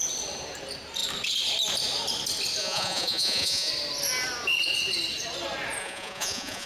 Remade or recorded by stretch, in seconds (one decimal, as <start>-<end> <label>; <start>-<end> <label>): 0.0-2.6 recorded; 2.6-3.7 remade; 3.7-5.8 recorded; 5.8-6.7 remade